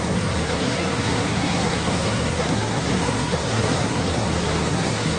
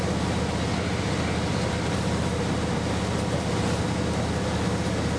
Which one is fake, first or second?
first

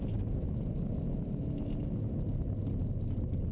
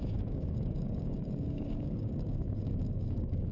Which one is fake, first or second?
second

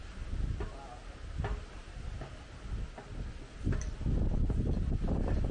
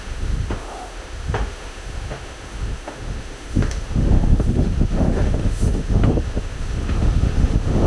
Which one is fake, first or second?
second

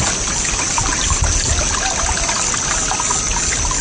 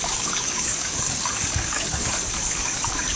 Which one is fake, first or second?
second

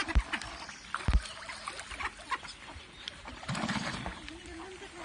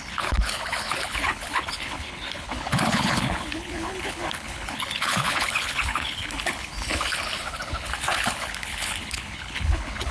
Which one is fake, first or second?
second